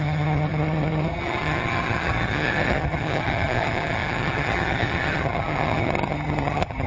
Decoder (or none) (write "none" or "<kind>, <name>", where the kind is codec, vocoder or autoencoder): vocoder, HiFi-GAN